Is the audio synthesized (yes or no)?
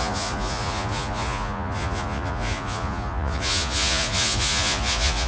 yes